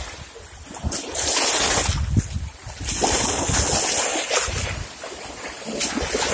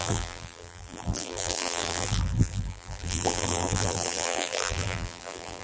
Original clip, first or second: first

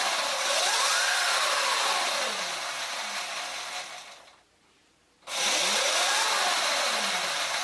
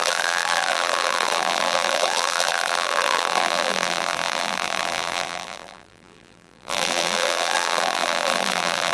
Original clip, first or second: first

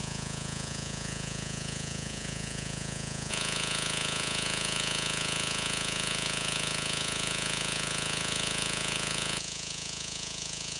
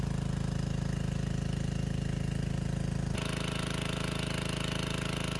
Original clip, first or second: second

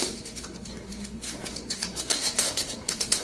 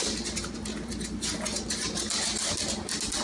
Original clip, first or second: second